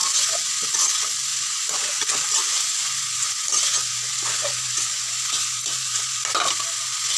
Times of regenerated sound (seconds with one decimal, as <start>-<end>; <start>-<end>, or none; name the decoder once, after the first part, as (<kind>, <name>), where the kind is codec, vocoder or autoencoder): 0.0-0.9 (vocoder, Vocos); 1.3-1.9; 2.4-6.0